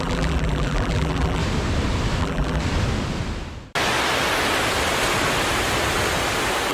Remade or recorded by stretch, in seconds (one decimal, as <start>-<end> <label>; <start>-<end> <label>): 0.0-1.4 remade; 1.4-2.2 recorded; 2.2-2.6 remade; 2.6-6.7 recorded